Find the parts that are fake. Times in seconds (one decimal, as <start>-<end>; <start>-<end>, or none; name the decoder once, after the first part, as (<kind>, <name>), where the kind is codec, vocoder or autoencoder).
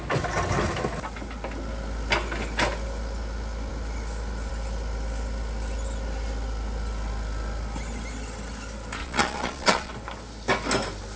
9.0-9.9 (vocoder, Vocos)